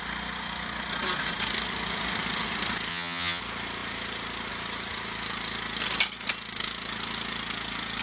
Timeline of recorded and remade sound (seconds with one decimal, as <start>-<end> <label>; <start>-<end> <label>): 0.0-2.9 recorded; 2.9-3.4 remade; 3.4-8.0 recorded